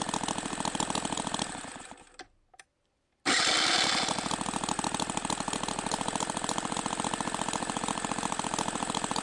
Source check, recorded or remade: recorded